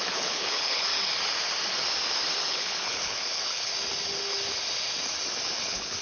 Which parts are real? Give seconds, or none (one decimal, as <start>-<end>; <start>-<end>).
0.9-2.4; 3.7-5.6